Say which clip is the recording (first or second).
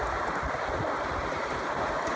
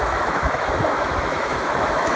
first